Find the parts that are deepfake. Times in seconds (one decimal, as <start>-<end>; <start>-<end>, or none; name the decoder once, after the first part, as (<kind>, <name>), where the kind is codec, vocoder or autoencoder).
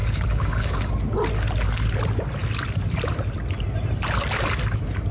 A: 0.0-0.9 (codec, DAC)